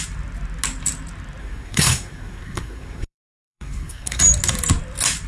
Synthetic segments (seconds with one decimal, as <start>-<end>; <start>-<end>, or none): 1.4-4.2